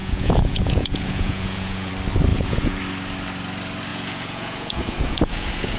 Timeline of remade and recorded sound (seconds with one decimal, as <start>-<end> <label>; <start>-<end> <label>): 0.0-1.9 remade; 1.9-2.3 recorded; 2.3-2.8 remade; 2.8-3.9 recorded; 3.9-5.8 remade